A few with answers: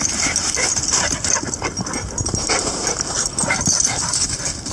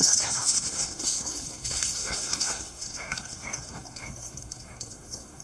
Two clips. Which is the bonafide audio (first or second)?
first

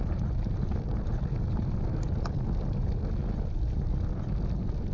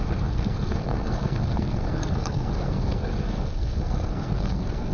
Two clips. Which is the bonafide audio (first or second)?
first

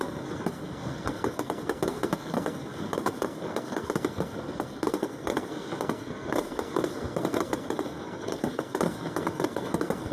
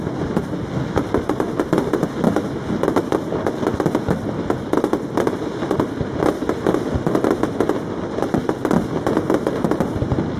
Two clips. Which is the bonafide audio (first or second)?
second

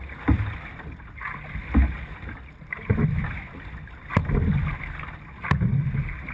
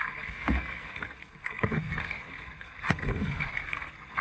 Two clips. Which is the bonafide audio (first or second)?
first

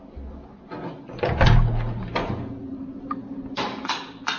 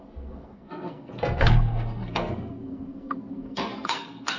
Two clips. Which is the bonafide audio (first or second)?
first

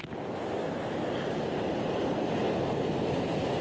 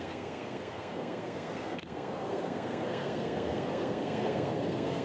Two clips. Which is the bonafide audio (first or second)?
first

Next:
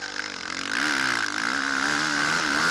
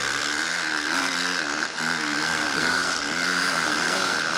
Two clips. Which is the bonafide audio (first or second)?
first